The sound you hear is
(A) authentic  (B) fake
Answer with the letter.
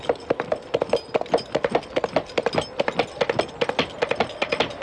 A